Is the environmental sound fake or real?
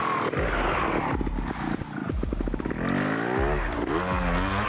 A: real